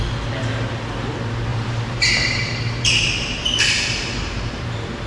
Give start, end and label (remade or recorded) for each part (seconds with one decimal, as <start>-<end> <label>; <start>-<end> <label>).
0.0-1.5 recorded; 1.5-4.6 remade; 4.6-5.1 recorded